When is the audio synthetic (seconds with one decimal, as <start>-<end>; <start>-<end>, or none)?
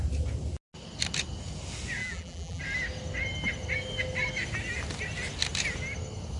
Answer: 2.0-2.6